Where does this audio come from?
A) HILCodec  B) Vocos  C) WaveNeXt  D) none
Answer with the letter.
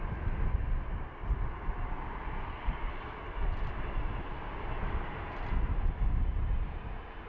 D